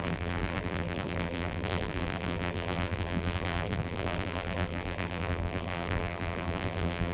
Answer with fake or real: fake